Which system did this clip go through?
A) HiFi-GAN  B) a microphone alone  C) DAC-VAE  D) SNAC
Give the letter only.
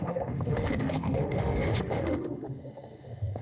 C